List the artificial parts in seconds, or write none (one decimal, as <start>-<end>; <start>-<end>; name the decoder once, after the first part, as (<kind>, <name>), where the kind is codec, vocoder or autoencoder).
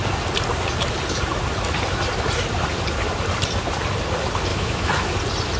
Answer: 4.5-5.1 (autoencoder, DAC-VAE)